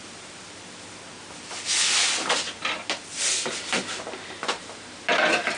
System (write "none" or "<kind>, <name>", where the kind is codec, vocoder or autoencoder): none